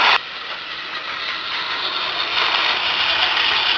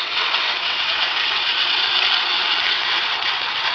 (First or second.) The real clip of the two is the first